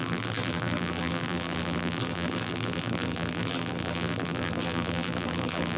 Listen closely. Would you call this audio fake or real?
fake